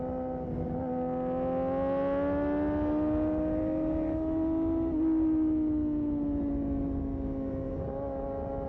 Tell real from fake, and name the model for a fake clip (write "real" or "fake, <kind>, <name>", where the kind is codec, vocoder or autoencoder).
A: real